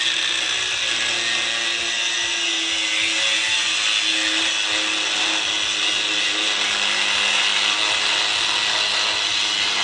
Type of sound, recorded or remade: recorded